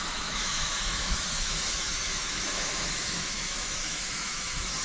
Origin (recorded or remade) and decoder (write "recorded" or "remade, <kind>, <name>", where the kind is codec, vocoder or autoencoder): remade, autoencoder, DAC-VAE